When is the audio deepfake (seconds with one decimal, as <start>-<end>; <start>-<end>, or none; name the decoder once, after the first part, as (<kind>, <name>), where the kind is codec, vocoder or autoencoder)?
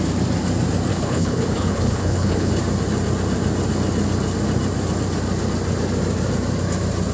0.9-2.5 (codec, HILCodec)